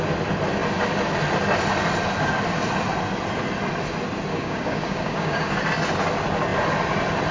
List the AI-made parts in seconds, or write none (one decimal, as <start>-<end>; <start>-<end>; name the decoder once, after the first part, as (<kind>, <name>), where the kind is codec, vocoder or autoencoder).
4.3-5.6 (codec, DAC)